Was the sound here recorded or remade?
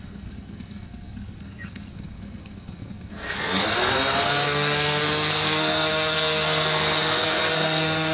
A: remade